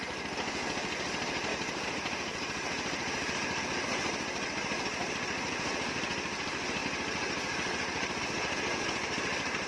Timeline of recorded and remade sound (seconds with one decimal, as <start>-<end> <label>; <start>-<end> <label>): 0.0-1.5 recorded; 1.5-3.6 remade; 3.6-6.8 recorded; 6.8-8.2 remade; 8.2-9.7 recorded

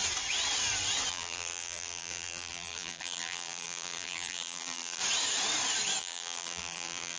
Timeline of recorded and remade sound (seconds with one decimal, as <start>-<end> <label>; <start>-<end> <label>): 0.0-1.1 recorded; 1.1-5.0 remade; 5.0-6.0 recorded; 6.0-7.2 remade

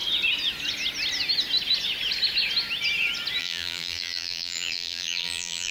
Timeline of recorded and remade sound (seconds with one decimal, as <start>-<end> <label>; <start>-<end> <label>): 0.0-3.4 recorded; 3.4-5.7 remade

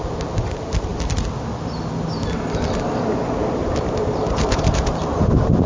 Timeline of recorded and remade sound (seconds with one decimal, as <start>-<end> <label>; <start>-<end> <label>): 0.0-0.9 remade; 0.9-3.6 recorded; 3.6-5.7 remade